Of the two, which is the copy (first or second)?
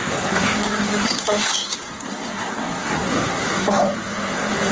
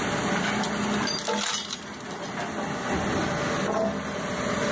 first